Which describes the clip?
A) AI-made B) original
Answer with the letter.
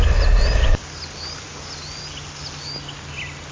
B